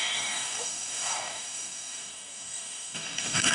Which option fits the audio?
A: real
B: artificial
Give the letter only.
B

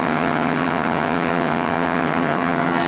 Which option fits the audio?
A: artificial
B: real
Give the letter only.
A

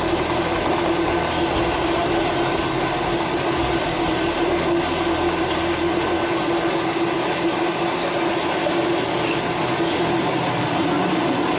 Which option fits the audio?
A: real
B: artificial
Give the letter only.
A